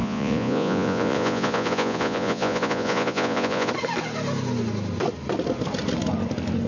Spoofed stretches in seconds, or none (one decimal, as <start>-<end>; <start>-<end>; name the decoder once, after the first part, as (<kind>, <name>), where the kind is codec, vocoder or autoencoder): 0.0-3.7 (vocoder, Vocos)